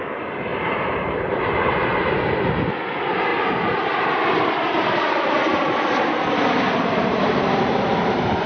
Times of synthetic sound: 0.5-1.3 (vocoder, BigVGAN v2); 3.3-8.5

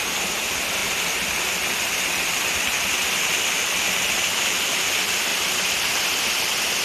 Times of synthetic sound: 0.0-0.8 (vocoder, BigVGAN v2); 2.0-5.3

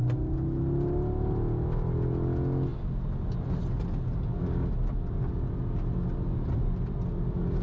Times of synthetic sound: none

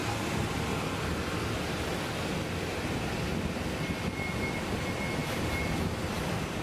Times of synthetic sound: 5.2-5.8 (vocoder, BigVGAN v2)

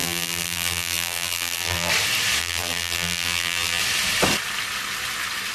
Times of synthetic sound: 0.0-1.9 (vocoder, BigVGAN v2); 2.4-3.8

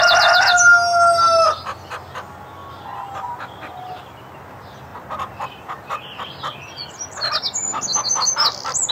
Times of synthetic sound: none

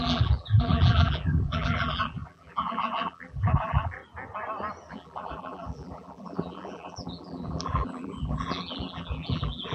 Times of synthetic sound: 0.0-4.0 (vocoder, BigVGAN v2); 4.9-9.7

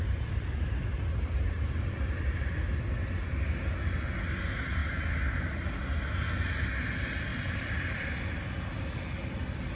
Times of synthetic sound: 7.3-8.1 (vocoder, BigVGAN v2)